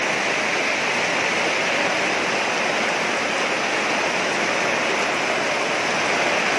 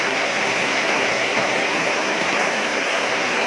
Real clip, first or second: first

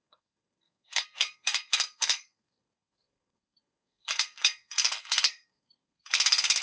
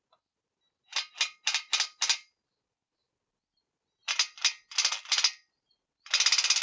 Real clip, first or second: second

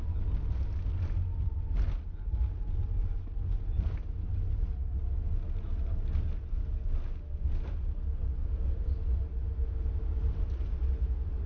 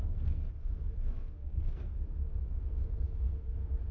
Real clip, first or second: first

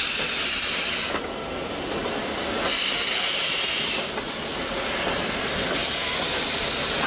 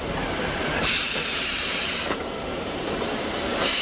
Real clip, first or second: first